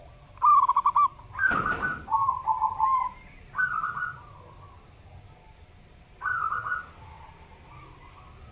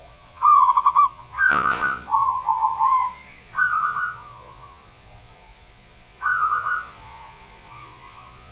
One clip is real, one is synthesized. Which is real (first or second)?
first